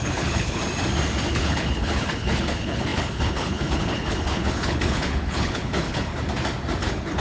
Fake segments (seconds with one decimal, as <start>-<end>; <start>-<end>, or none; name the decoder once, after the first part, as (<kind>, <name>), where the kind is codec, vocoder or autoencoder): 0.0-0.6 (codec, HILCodec); 1.3-6.1; 6.8-7.2

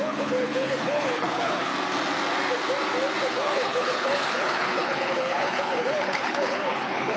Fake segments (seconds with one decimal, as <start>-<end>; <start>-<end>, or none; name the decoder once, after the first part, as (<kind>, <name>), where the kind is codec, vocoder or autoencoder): 0.0-1.7 (codec, HILCodec); 3.3-7.2

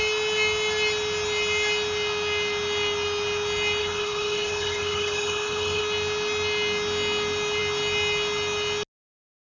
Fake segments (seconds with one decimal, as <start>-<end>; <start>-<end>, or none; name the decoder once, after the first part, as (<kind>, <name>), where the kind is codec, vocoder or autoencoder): 3.8-5.8 (codec, HILCodec)

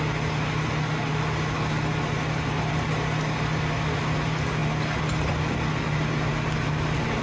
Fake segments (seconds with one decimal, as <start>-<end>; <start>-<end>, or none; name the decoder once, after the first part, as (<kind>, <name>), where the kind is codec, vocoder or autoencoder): none

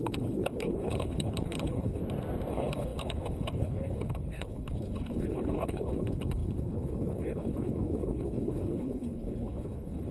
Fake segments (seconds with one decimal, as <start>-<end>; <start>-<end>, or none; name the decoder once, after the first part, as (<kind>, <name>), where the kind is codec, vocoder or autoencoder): 0.0-2.0 (codec, HILCodec); 2.5-10.1

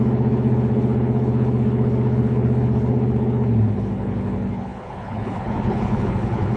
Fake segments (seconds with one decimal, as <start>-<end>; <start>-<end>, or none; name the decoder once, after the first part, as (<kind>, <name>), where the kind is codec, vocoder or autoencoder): 0.0-6.6 (codec, HILCodec)

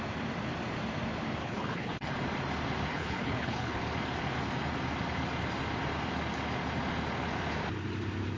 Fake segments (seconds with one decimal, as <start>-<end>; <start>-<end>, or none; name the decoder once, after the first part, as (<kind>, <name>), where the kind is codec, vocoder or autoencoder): 1.4-2.1 (codec, HILCodec); 2.9-3.8

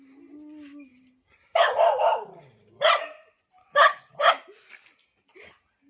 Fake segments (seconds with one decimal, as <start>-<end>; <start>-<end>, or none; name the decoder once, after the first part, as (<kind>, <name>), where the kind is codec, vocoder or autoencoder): 3.6-4.3 (codec, HILCodec)